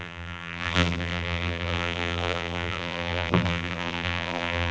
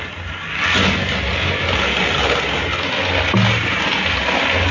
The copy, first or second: first